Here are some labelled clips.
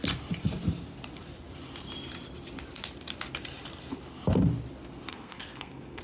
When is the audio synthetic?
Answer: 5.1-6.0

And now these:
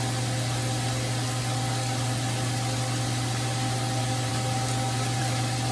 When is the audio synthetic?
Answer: none

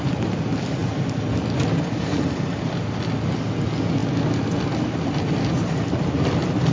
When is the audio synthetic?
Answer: none

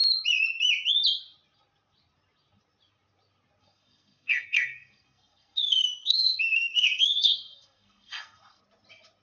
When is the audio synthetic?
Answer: 3.6-8.6